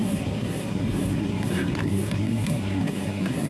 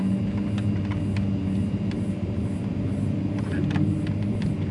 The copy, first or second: first